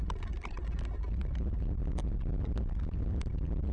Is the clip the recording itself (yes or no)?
yes